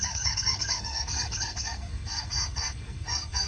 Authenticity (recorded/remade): remade